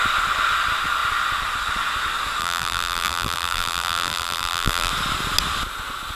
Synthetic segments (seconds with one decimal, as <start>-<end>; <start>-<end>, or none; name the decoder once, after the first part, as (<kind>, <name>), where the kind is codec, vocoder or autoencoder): 2.4-4.9 (vocoder, BigVGAN v2)